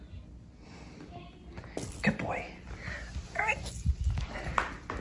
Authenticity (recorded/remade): recorded